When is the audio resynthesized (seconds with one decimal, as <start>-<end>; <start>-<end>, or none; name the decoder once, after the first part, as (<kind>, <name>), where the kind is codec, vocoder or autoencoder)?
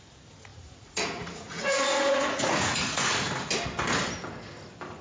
0.5-3.5 (vocoder, Vocos)